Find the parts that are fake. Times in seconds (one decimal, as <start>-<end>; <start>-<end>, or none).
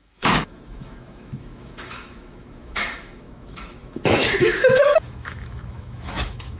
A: 0.0-6.6